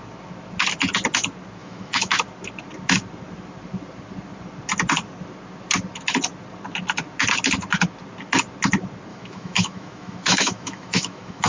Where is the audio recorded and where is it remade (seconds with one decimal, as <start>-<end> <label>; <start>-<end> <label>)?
0.0-1.6 recorded; 1.6-2.1 remade; 2.1-9.1 recorded; 9.1-11.5 remade